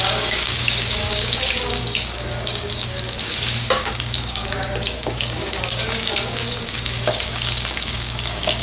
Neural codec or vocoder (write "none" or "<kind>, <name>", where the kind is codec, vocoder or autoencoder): codec, DAC